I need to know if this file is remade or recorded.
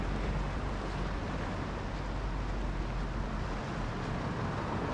recorded